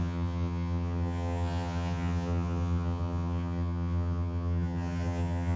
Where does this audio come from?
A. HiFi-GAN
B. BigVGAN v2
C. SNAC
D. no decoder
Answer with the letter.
A